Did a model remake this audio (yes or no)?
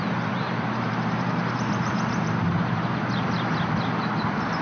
yes